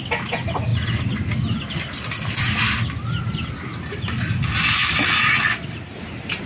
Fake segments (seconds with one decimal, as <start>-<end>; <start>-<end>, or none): none